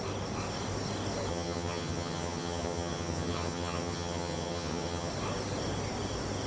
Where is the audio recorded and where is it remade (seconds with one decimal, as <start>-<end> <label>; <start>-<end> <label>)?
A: 0.0-1.3 recorded; 1.3-5.1 remade; 5.1-6.5 recorded

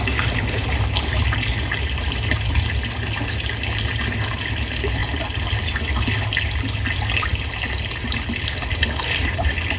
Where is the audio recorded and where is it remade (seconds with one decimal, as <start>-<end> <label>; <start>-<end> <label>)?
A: 0.0-9.8 recorded

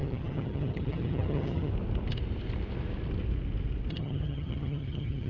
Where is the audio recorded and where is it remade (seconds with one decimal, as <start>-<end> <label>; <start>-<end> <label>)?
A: 0.0-1.7 remade; 1.7-3.9 recorded; 3.9-5.3 remade

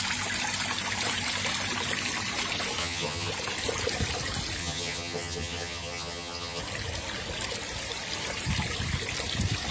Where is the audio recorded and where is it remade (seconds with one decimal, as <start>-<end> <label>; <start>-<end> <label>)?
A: 0.0-2.8 recorded; 2.8-3.3 remade; 3.3-4.6 recorded; 4.6-6.6 remade; 6.6-9.7 recorded

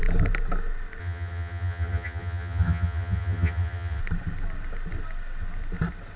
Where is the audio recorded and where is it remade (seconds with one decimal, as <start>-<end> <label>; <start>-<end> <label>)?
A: 0.0-1.0 recorded; 1.0-4.0 remade; 4.0-6.2 recorded